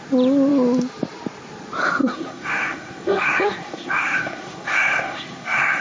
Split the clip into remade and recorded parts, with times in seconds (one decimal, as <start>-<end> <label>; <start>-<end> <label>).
0.0-2.0 recorded; 2.0-5.8 remade